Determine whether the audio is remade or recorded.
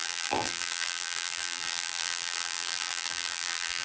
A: remade